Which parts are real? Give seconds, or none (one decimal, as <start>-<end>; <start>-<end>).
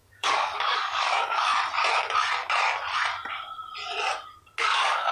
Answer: 1.5-4.6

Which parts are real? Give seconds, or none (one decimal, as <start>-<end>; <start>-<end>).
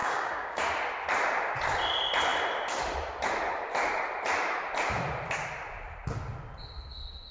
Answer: 0.6-7.3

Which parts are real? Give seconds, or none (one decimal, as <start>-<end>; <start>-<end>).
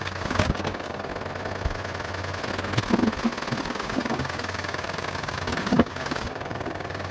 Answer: 1.1-3.6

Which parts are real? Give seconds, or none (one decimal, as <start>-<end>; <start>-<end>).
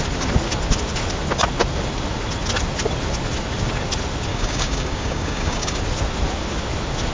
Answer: 0.0-4.3; 5.8-7.1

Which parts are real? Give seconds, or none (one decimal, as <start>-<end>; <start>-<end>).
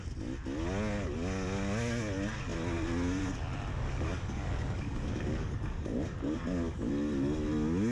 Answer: 0.0-3.7; 6.9-7.9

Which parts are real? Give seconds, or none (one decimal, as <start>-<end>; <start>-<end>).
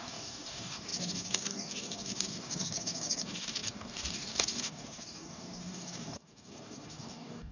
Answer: none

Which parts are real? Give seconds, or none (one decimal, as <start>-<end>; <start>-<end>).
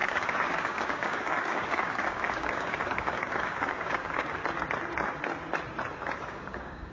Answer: 4.4-6.2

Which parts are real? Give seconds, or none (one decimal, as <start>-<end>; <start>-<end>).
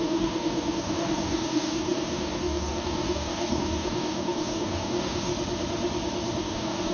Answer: 5.3-6.4